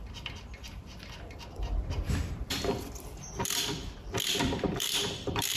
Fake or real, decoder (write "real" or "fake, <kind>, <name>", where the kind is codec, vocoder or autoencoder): fake, vocoder, BigVGAN v2